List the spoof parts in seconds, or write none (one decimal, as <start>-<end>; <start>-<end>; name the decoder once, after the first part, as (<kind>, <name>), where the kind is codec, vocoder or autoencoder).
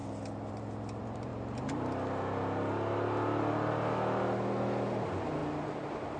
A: 0.5-1.3 (vocoder, BigVGAN v2); 5.0-6.2